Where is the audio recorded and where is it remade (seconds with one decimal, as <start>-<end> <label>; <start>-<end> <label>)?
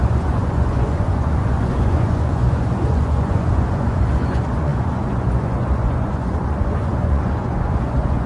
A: 0.0-8.3 remade